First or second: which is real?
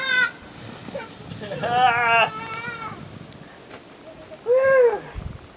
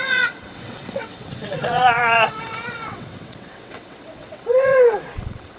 first